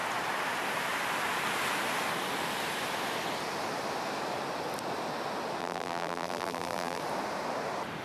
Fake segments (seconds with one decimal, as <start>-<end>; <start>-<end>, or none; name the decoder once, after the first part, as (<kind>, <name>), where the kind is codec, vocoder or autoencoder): 5.6-7.0 (vocoder, BigVGAN v2)